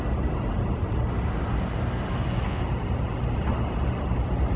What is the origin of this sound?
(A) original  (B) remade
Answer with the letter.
A